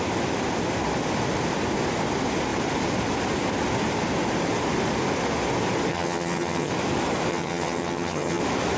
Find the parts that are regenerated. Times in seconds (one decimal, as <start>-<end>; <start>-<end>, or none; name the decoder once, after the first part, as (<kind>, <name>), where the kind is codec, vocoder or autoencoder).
5.9-6.7 (vocoder, HiFi-GAN); 7.3-8.4